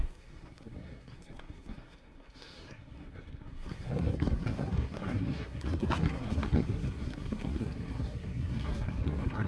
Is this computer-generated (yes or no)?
yes